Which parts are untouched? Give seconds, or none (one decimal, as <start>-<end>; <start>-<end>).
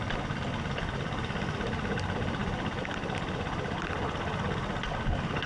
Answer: 0.0-5.5